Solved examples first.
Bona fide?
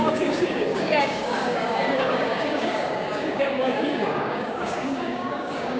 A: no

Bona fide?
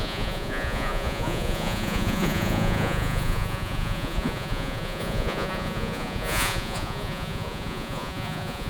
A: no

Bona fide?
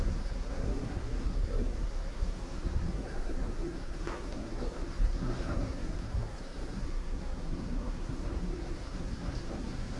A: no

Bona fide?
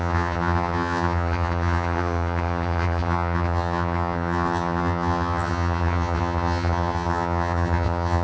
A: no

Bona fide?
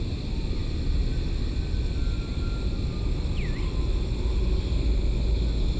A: yes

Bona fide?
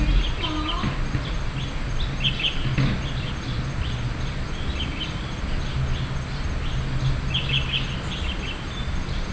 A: yes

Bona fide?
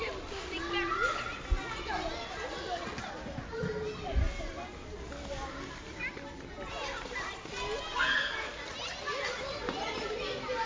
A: yes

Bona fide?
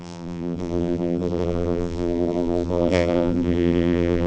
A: no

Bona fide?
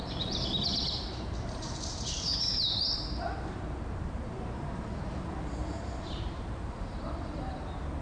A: no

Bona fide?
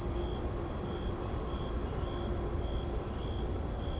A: yes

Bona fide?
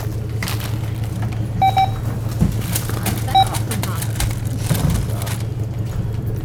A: yes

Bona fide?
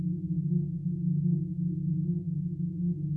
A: no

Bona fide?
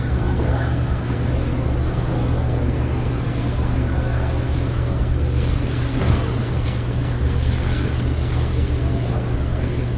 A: no